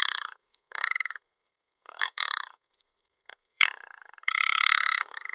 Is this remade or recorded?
remade